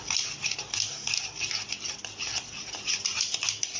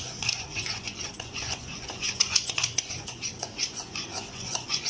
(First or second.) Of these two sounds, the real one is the first